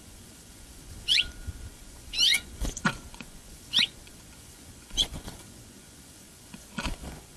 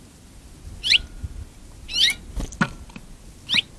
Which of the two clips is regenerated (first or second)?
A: first